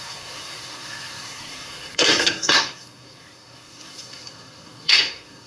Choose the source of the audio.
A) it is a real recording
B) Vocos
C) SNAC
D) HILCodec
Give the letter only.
C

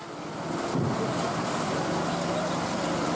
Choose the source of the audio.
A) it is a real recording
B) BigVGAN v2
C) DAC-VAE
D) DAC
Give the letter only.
A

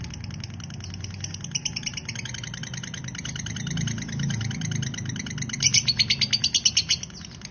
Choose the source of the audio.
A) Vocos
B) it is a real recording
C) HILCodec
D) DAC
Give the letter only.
B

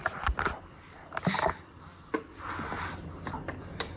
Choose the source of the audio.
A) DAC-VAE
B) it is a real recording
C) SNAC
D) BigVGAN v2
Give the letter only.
B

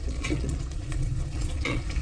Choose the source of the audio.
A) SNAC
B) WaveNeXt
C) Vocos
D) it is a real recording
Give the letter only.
C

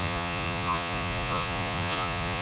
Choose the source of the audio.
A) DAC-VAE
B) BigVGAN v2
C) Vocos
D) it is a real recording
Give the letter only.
C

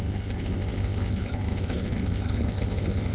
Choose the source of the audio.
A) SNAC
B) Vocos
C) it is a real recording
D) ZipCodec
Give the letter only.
D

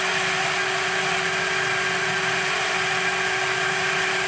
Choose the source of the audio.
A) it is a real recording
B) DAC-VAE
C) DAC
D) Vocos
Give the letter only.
A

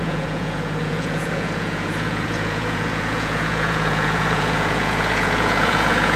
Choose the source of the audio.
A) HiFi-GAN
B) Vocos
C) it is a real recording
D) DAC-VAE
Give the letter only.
B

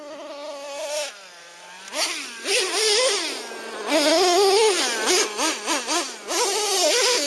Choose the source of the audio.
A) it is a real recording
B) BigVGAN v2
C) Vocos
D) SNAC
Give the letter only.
A